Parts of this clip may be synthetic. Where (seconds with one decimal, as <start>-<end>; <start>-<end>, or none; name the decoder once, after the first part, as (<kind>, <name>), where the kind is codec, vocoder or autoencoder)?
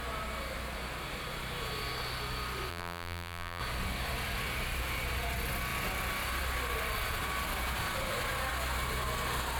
2.7-3.6 (vocoder, BigVGAN v2)